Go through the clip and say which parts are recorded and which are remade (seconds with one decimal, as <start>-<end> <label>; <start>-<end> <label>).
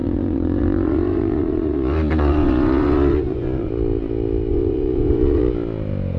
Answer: 0.0-3.7 remade; 3.7-4.5 recorded; 4.5-5.4 remade; 5.4-6.2 recorded